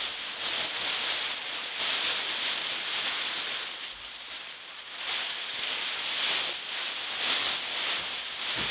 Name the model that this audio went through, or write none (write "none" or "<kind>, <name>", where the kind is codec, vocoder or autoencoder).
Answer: none